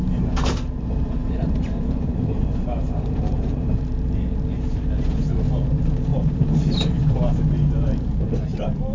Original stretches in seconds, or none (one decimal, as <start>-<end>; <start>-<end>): 0.0-1.2; 3.8-6.1; 7.4-8.9